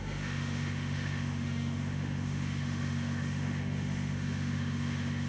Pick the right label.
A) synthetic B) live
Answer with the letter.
A